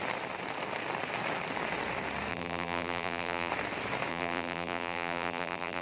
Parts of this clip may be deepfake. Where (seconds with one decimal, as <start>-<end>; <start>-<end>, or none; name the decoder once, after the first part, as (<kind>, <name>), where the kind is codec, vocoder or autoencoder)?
2.3-3.5 (vocoder, BigVGAN v2); 4.1-5.8